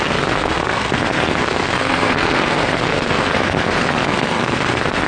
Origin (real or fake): fake